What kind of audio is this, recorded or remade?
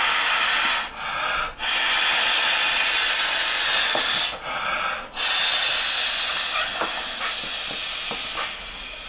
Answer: recorded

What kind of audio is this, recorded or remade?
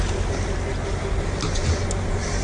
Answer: recorded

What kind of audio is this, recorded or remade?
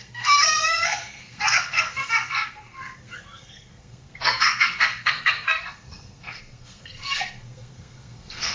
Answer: remade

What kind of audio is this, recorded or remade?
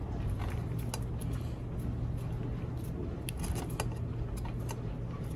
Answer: recorded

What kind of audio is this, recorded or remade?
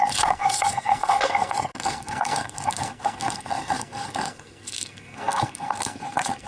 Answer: remade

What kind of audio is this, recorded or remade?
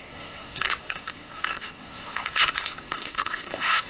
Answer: remade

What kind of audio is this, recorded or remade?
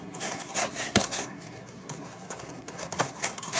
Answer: remade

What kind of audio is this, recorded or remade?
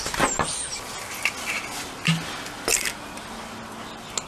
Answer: recorded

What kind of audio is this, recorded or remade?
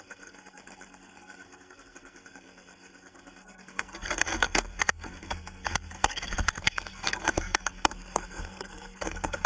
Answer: remade